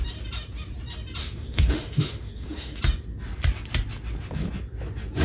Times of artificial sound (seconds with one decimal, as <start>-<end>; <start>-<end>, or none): 1.2-2.8